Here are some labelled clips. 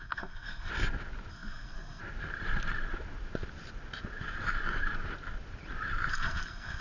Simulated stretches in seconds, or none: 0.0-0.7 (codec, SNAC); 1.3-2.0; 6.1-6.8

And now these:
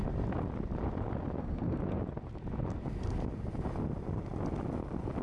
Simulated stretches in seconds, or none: 1.4-1.8 (codec, SNAC)

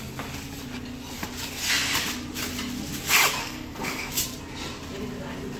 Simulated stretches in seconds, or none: 3.4-4.1 (codec, SNAC)

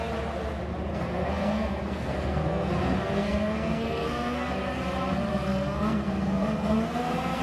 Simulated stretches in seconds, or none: 0.9-4.5 (codec, SNAC); 5.3-7.4

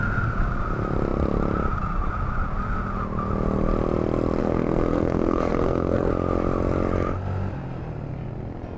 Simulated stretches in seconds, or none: 4.4-6.1 (codec, SNAC)

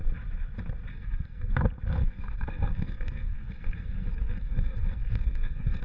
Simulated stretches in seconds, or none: 0.9-1.5 (codec, SNAC); 2.0-5.8

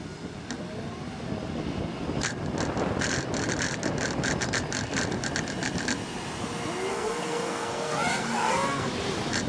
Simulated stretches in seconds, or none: 6.9-8.9 (codec, SNAC)